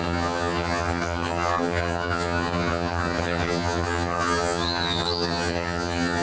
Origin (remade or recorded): remade